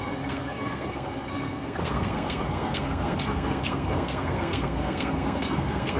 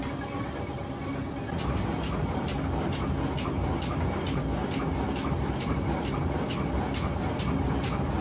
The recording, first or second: second